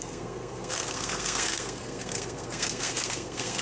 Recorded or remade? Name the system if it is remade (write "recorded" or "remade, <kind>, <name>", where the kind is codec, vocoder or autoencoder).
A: remade, codec, SNAC